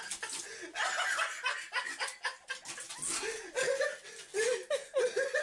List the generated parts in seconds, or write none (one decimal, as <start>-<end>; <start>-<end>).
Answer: none